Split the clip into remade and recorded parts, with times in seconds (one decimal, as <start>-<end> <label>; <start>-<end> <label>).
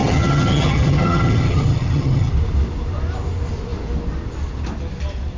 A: 0.0-2.3 remade; 2.3-5.4 recorded